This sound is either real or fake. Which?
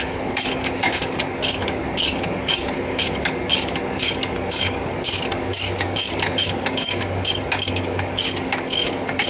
fake